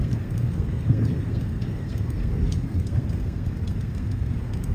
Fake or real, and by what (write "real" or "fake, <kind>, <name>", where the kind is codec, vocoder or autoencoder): fake, codec, SNAC